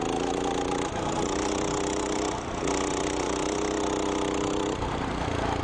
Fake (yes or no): no